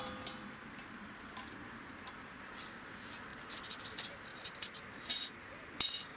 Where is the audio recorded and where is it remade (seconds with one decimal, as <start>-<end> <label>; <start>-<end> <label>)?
0.0-4.3 recorded; 4.3-5.7 remade; 5.7-6.2 recorded